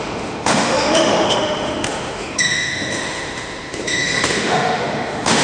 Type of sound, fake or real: fake